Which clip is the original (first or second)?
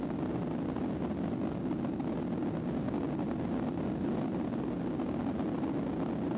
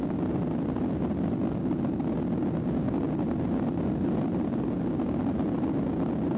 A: first